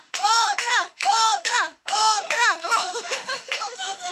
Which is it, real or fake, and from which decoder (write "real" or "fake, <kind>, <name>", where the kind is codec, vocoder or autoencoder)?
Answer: fake, autoencoder, DAC-VAE